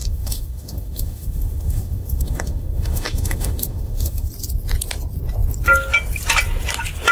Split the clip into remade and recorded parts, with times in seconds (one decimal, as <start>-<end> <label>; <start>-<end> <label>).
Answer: 0.0-4.3 remade; 4.3-7.1 recorded